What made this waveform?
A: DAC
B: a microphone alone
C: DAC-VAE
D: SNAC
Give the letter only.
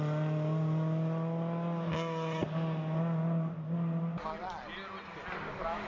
B